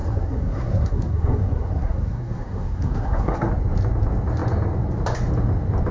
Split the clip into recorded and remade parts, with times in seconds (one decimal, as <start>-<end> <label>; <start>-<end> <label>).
0.0-3.5 remade; 3.5-5.9 recorded